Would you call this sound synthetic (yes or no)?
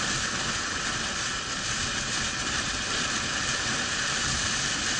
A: no